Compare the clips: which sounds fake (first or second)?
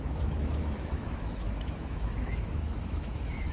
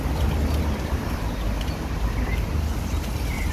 first